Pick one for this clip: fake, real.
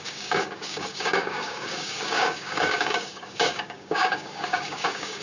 fake